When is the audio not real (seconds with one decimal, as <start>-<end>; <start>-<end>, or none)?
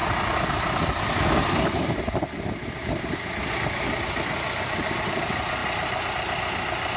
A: none